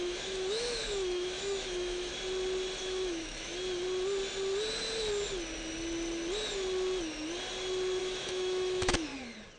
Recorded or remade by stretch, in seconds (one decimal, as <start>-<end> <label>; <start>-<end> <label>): 0.0-2.1 remade; 2.1-2.8 recorded; 2.8-3.5 remade; 3.5-8.0 recorded; 8.0-9.1 remade; 9.1-9.6 recorded